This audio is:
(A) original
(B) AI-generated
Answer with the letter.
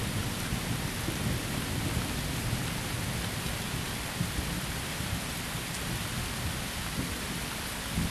A